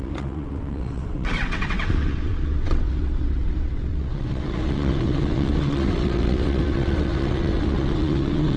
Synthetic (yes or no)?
yes